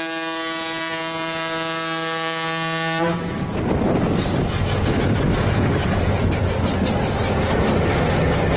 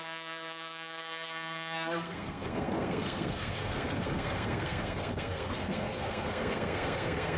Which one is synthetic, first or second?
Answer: second